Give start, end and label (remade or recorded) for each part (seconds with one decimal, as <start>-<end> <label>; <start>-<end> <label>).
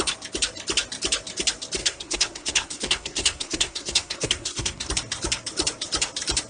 0.0-1.8 recorded; 1.8-4.9 remade; 4.9-6.5 recorded